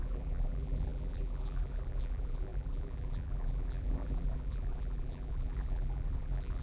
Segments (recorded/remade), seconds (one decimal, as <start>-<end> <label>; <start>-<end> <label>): 0.0-6.6 remade